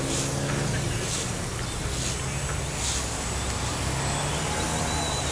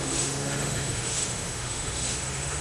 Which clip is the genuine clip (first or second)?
first